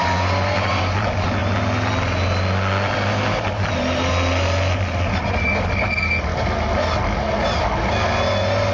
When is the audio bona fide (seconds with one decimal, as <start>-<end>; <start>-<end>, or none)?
0.0-8.7